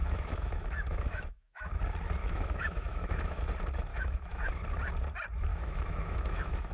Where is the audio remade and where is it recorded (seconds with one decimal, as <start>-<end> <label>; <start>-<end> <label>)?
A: 0.0-1.8 remade; 1.8-2.2 recorded; 2.2-3.5 remade; 3.5-3.9 recorded; 3.9-4.5 remade; 4.5-5.5 recorded; 5.5-6.7 remade